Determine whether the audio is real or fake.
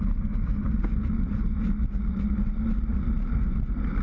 real